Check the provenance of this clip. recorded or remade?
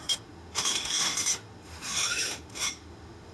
remade